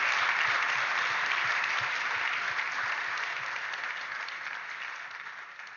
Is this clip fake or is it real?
fake